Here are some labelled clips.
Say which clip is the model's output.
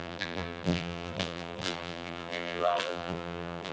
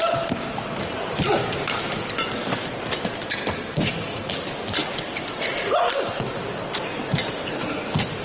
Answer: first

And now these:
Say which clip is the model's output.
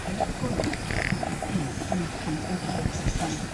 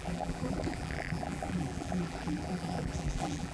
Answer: second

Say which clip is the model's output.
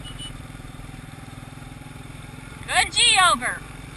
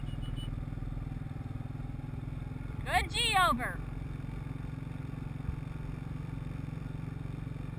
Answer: first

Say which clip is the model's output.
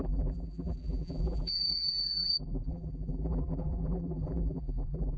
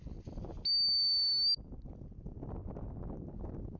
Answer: first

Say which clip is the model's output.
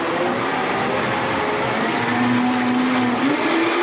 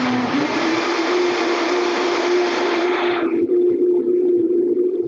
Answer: second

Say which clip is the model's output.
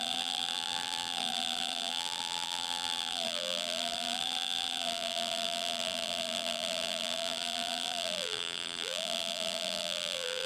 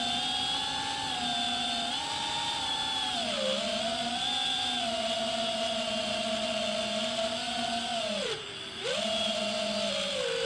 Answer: first